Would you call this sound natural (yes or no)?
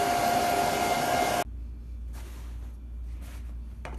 yes